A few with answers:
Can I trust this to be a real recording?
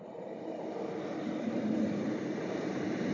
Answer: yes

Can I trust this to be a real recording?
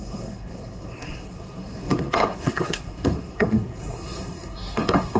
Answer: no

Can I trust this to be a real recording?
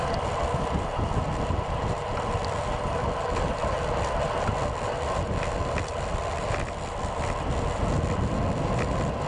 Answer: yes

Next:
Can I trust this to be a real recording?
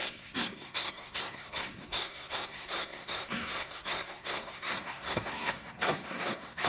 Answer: no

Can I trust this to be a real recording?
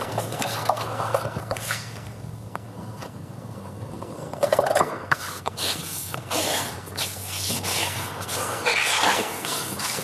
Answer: no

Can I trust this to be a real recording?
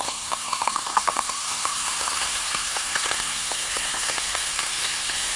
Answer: no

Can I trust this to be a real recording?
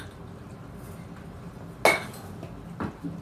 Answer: yes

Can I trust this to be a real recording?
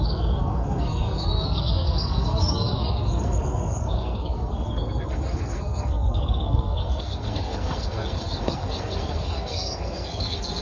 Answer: no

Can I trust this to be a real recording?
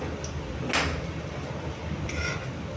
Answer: yes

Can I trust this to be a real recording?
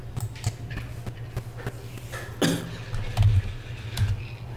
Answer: yes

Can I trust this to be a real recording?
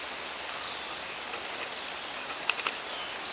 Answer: yes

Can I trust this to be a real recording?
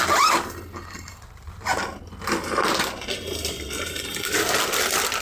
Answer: yes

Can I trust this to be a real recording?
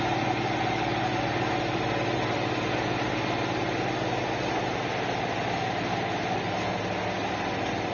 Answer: yes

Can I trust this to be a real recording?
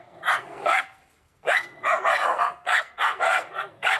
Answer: no